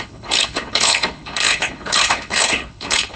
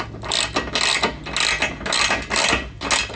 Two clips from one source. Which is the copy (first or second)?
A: first